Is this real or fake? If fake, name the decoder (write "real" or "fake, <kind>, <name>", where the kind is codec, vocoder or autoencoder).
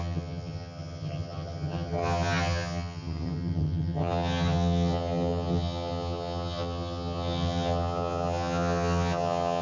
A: fake, vocoder, HiFi-GAN